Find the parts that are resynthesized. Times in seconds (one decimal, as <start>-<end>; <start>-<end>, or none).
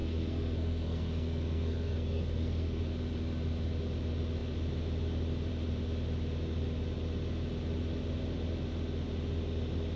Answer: 0.0-2.8